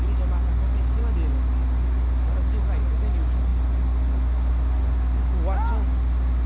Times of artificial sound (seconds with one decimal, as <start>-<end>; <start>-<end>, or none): none